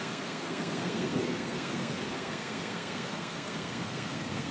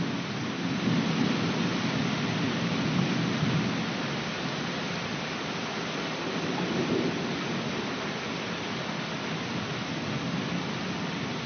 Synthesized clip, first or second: first